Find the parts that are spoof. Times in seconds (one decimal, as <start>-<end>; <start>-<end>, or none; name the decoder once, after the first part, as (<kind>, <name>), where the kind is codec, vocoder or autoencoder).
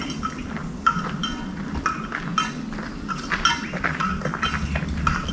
none